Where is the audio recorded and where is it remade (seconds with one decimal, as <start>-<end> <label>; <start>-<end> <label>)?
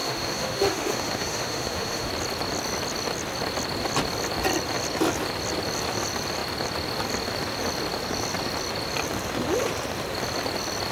0.0-2.1 remade; 2.1-10.9 recorded